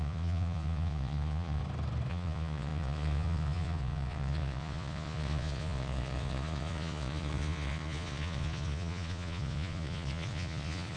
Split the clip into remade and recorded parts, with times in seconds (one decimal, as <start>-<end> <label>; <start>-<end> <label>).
0.0-1.6 remade; 1.6-2.1 recorded; 2.1-11.0 remade

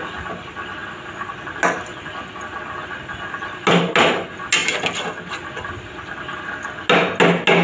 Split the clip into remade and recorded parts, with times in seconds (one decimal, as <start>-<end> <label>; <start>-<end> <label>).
0.0-7.6 recorded

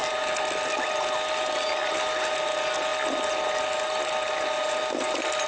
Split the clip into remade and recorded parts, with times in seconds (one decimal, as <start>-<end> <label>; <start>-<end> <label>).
0.0-5.5 recorded

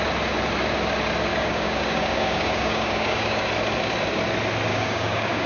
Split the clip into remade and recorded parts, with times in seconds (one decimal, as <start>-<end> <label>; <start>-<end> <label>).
0.0-1.3 recorded; 1.3-3.5 remade; 3.5-4.7 recorded; 4.7-5.5 remade

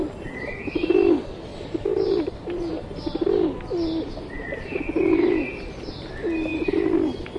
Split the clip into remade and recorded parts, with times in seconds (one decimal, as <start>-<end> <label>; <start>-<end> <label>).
0.0-1.5 recorded; 1.5-2.7 remade; 2.7-7.4 recorded